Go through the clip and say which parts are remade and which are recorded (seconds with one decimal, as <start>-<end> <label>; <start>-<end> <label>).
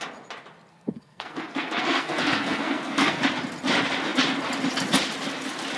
0.0-0.7 recorded; 0.7-3.2 remade; 3.2-5.8 recorded